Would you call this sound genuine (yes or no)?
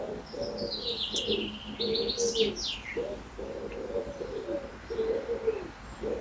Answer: yes